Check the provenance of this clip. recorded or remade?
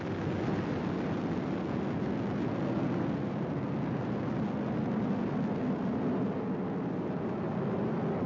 recorded